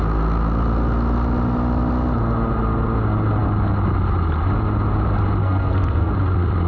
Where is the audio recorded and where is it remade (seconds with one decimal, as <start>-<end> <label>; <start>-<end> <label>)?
0.0-5.4 recorded; 5.4-6.1 remade; 6.1-6.7 recorded